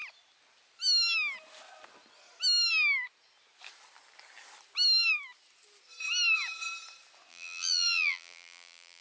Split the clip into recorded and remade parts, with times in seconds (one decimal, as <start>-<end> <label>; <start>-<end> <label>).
0.0-7.3 recorded; 7.3-9.0 remade